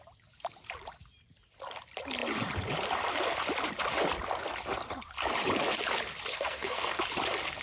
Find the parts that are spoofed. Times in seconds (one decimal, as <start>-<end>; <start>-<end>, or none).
6.3-7.0